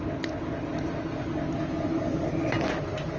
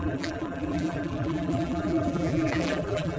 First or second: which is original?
first